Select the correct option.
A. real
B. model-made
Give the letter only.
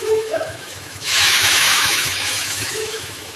B